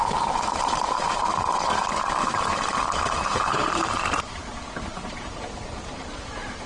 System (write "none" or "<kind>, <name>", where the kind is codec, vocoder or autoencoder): vocoder, BigVGAN v2